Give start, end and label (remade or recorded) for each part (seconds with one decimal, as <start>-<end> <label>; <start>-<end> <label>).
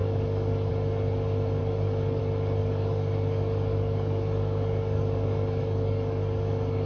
0.0-0.7 remade; 0.7-1.6 recorded; 1.6-2.2 remade; 2.2-2.6 recorded; 2.6-6.9 remade